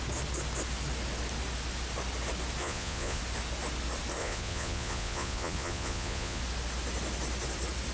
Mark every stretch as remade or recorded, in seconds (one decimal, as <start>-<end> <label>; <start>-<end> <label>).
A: 0.0-2.6 recorded; 2.6-3.2 remade; 3.2-4.2 recorded; 4.2-6.4 remade; 6.4-7.9 recorded